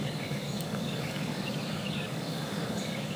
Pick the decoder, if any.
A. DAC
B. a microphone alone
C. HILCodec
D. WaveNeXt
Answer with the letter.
A